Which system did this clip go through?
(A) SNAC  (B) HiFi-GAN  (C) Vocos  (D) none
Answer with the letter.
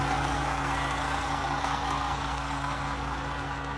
A